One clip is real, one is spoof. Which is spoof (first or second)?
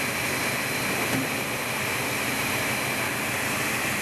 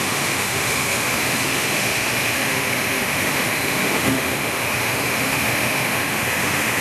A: second